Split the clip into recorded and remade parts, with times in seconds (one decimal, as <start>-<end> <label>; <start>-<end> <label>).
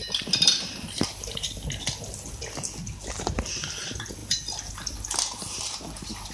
0.0-3.8 remade; 3.8-4.2 recorded; 4.2-4.7 remade; 4.7-6.3 recorded